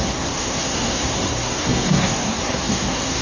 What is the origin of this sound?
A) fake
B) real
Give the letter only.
A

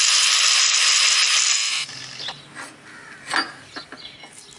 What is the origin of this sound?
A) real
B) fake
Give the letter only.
A